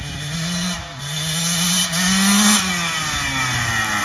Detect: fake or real real